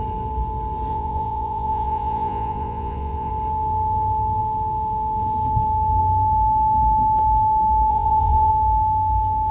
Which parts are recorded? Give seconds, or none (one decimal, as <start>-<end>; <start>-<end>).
0.0-0.9; 3.3-7.9; 8.5-9.5